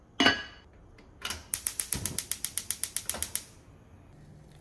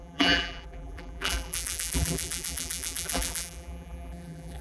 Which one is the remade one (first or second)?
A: second